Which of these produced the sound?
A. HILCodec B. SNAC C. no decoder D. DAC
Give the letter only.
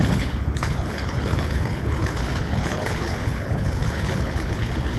A